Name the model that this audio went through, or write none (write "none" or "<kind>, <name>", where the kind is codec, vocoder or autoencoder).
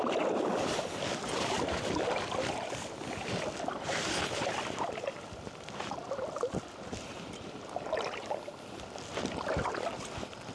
vocoder, BigVGAN v2